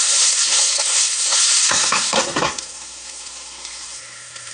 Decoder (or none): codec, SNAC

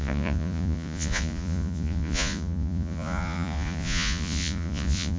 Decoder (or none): vocoder, Vocos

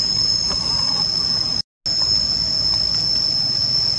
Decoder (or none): none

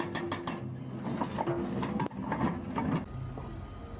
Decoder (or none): none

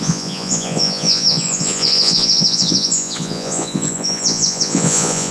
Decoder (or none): vocoder, Vocos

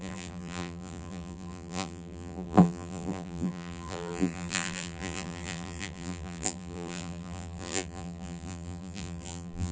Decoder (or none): vocoder, BigVGAN v2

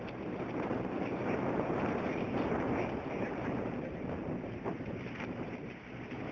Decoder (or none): vocoder, BigVGAN v2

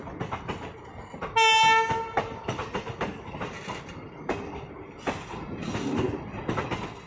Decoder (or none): none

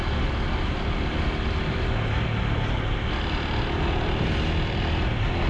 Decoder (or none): none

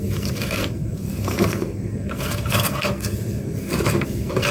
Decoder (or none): codec, SNAC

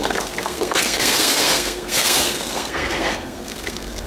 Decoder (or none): codec, SNAC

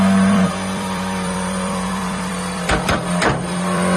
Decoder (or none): vocoder, BigVGAN v2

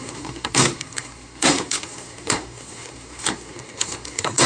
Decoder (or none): codec, SNAC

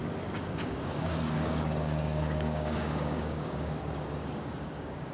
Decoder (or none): codec, DAC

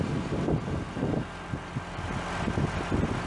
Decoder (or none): none